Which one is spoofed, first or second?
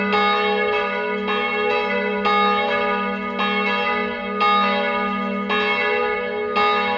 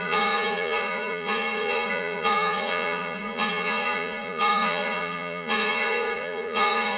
second